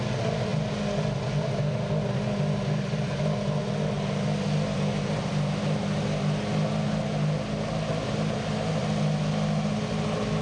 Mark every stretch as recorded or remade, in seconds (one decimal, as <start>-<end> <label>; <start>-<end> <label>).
0.0-10.4 recorded